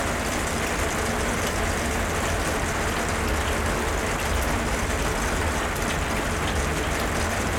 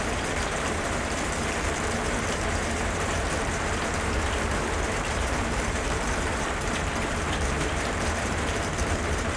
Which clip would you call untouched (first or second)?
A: first